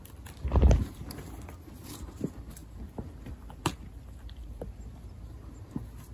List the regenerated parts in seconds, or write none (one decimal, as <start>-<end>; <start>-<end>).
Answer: none